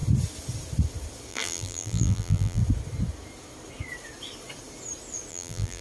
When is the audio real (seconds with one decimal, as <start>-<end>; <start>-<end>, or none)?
0.0-1.3; 2.6-5.3